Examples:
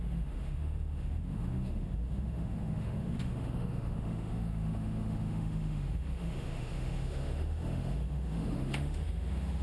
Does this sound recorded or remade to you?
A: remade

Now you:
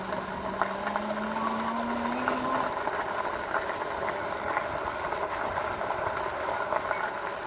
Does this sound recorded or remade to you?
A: recorded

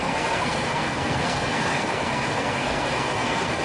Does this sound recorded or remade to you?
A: remade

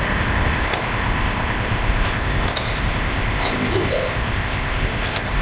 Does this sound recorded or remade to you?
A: remade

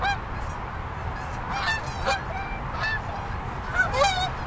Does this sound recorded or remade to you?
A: recorded